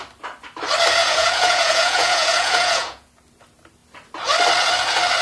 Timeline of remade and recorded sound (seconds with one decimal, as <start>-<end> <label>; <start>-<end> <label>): 0.0-1.0 recorded; 1.0-3.1 remade; 3.1-5.2 recorded